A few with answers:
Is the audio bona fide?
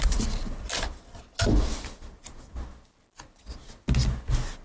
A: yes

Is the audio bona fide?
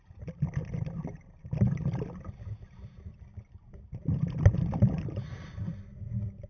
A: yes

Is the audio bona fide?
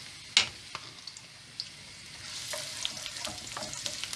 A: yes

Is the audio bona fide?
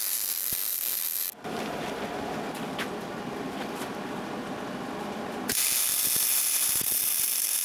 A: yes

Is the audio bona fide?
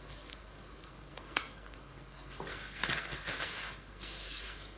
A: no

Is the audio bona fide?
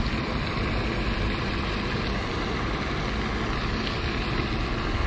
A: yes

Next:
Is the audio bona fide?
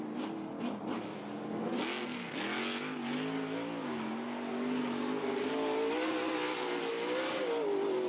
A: yes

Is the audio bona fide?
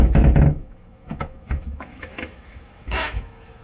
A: no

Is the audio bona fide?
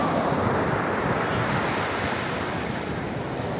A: yes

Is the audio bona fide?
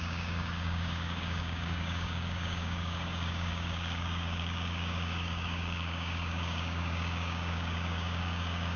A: no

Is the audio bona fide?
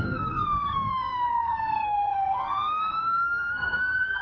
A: no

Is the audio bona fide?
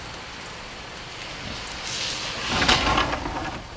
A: yes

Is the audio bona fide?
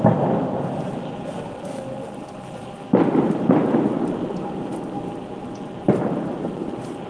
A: yes